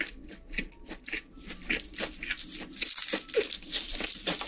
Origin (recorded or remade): recorded